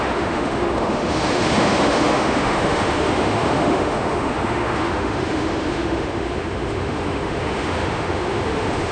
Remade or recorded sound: remade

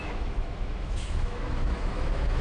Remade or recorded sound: remade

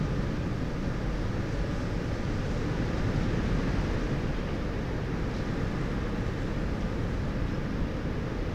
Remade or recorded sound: recorded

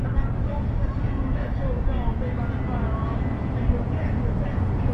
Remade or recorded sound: recorded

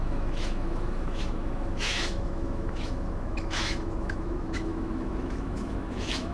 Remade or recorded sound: remade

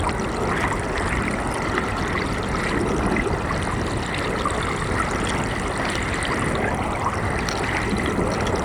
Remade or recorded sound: recorded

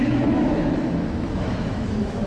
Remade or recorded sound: remade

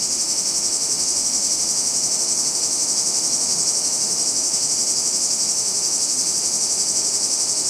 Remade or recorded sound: remade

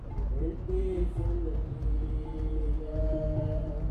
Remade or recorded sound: recorded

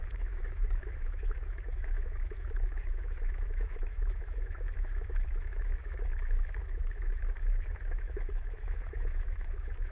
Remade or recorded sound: remade